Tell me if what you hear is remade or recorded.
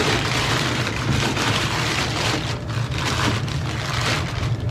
remade